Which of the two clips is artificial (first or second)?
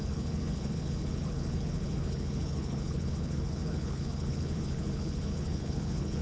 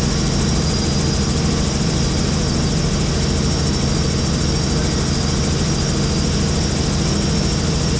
first